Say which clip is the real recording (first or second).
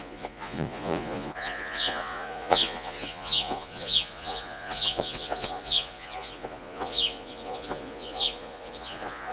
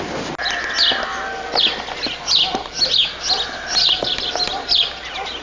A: second